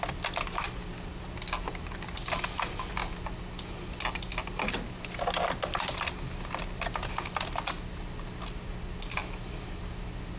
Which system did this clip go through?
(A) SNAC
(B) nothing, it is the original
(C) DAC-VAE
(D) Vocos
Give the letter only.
B